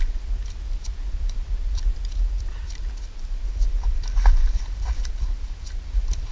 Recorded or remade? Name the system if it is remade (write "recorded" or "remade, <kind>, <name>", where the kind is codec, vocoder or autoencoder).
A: remade, vocoder, BigVGAN v2